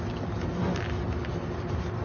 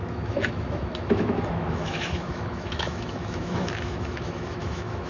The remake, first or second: second